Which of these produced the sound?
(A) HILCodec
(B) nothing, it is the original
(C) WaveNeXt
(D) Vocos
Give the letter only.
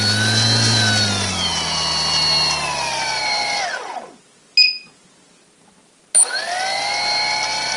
B